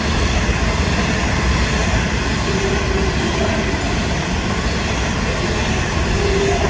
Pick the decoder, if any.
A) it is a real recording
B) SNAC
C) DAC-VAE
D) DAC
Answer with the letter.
A